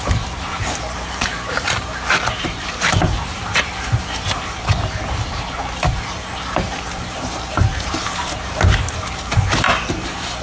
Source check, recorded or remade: remade